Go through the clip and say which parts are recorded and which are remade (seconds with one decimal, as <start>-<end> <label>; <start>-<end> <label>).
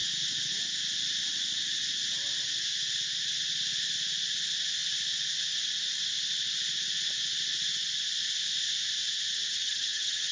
0.0-9.6 recorded; 9.6-10.3 remade